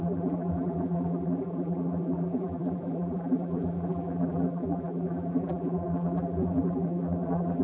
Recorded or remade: remade